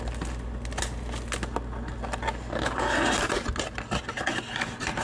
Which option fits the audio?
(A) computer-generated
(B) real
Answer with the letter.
B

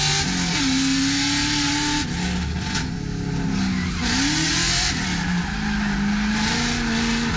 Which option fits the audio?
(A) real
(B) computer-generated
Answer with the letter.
A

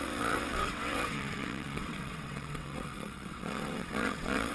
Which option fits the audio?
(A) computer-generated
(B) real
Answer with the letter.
A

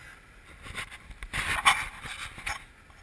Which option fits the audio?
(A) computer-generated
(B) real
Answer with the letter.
B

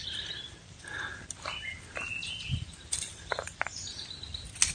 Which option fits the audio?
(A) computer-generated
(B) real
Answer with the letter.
B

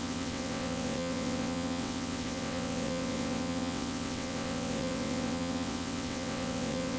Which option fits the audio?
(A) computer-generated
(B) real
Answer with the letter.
A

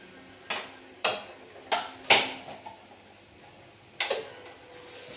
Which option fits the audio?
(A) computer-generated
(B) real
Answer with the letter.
B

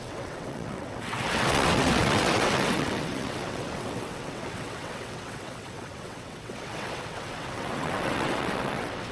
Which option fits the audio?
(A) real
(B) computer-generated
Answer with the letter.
B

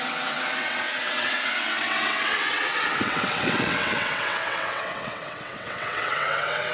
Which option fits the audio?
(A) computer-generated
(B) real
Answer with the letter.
A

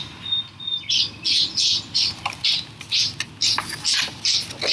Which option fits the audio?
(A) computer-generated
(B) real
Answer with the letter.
B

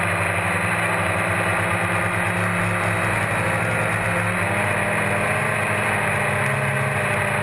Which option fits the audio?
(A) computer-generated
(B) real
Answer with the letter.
B